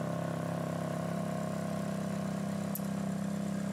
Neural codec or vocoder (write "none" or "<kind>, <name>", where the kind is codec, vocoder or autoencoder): none